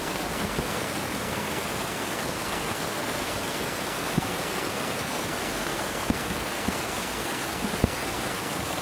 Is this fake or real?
fake